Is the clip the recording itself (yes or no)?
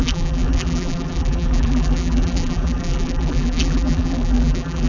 no